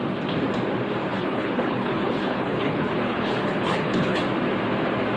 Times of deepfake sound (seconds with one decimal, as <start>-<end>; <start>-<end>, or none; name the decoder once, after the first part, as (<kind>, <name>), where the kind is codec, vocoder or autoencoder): 1.1-4.2 (codec, HILCodec)